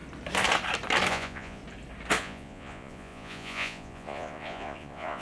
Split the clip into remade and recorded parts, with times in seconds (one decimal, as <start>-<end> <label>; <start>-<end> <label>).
0.0-1.1 recorded; 1.1-1.6 remade; 1.6-2.2 recorded; 2.2-5.2 remade